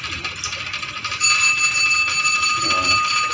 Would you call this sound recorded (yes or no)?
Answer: yes